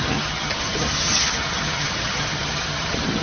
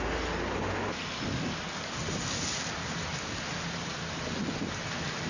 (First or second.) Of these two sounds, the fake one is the first